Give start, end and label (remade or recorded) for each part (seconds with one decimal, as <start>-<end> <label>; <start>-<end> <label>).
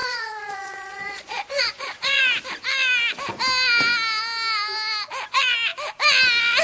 0.0-2.2 remade; 2.2-6.6 recorded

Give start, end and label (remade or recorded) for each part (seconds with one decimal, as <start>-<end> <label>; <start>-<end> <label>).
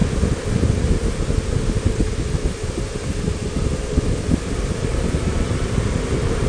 0.0-6.5 recorded